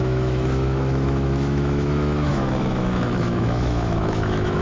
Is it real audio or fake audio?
fake